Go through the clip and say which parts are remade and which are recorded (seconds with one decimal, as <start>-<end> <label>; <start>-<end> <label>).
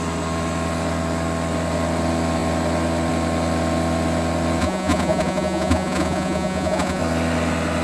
0.0-4.6 recorded; 4.6-7.0 remade; 7.0-7.8 recorded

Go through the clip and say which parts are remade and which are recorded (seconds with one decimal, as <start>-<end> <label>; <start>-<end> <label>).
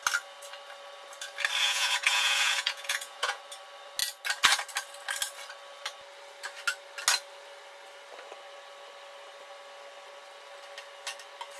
0.0-1.6 recorded; 1.6-3.4 remade; 3.4-11.6 recorded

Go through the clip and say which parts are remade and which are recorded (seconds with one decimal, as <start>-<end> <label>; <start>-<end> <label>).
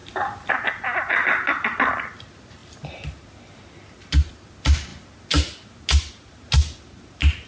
0.0-7.5 recorded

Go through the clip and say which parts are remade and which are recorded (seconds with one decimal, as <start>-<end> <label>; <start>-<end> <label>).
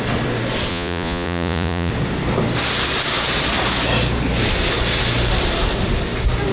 0.0-0.7 recorded; 0.7-1.9 remade; 1.9-6.5 recorded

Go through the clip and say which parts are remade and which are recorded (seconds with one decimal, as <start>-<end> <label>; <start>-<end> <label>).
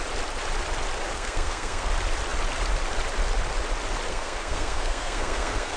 0.0-1.1 recorded; 1.1-1.9 remade; 1.9-4.1 recorded; 4.1-5.8 remade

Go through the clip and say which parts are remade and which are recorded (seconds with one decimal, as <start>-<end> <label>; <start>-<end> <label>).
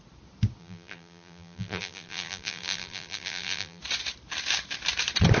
0.0-0.6 recorded; 0.6-3.8 remade; 3.8-5.4 recorded